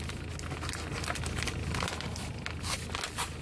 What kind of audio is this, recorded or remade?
recorded